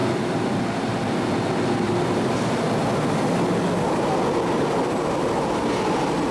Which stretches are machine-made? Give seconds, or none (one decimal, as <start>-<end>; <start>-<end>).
none